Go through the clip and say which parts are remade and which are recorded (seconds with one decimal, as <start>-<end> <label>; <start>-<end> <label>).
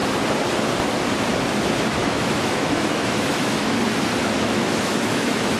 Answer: 0.0-2.0 recorded; 2.0-3.8 remade; 3.8-4.2 recorded; 4.2-5.6 remade